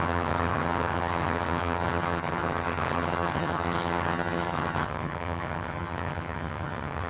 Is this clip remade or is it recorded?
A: remade